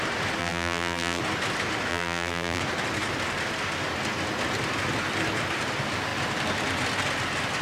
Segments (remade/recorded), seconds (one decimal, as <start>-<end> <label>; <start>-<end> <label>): 0.0-0.4 recorded; 0.4-1.2 remade; 1.2-1.9 recorded; 1.9-2.6 remade; 2.6-7.6 recorded